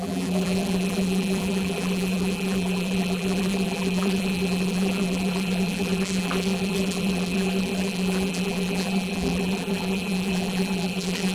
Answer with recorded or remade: remade